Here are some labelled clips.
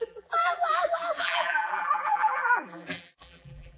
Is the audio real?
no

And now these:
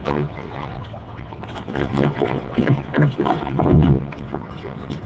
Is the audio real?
no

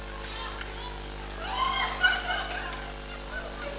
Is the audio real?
yes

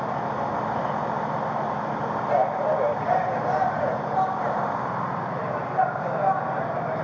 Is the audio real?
yes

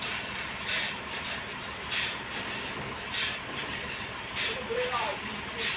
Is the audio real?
no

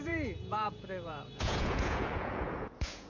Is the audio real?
no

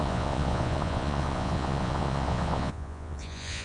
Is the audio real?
no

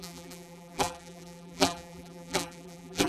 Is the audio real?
no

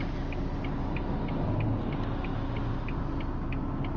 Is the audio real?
yes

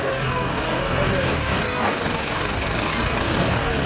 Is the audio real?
no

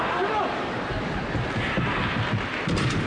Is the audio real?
yes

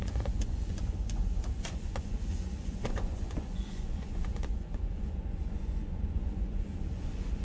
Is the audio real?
no